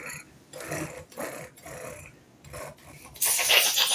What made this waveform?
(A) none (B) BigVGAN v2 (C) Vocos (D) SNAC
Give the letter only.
A